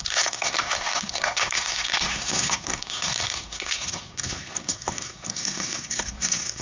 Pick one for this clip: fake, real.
fake